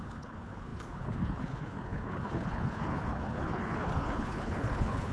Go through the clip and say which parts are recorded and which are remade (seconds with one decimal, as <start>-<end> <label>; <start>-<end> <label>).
0.0-5.1 remade